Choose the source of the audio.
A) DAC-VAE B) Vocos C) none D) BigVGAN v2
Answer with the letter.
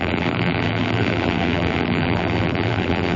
D